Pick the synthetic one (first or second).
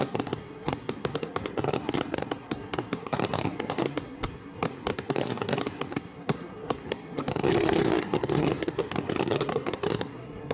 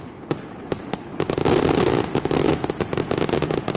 first